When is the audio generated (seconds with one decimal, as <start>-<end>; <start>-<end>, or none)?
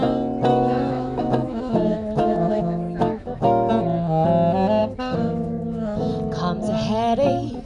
0.5-3.7; 4.8-6.1